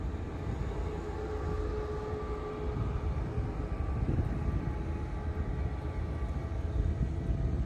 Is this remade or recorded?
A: recorded